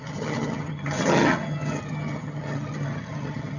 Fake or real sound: fake